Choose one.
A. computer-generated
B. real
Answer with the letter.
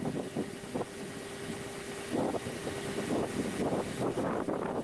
B